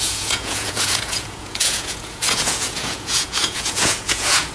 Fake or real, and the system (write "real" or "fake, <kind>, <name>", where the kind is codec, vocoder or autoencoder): fake, vocoder, Vocos